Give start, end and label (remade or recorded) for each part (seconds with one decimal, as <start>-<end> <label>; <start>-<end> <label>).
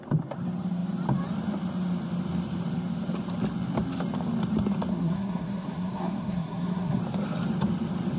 0.0-4.9 recorded; 4.9-7.0 remade; 7.0-8.2 recorded